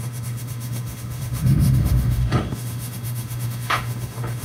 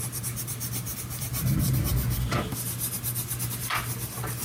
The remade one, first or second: first